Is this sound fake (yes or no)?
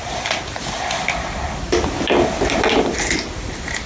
no